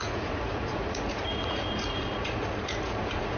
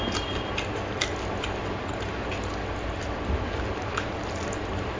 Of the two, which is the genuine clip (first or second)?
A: second